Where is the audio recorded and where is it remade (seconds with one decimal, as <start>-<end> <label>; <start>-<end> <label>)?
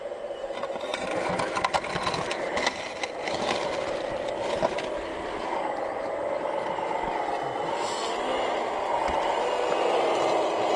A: 0.0-10.8 recorded